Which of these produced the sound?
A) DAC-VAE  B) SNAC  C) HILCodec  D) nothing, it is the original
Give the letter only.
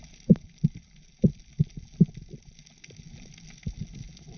D